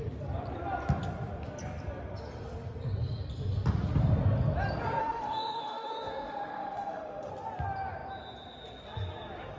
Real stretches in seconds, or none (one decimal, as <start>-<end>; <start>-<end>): 0.0-5.0; 7.3-9.6